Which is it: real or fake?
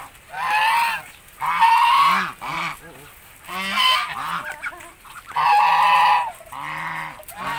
real